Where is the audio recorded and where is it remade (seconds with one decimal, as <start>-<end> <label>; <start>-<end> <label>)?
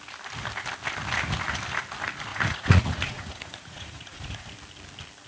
0.0-2.3 recorded; 2.3-4.5 remade; 4.5-5.3 recorded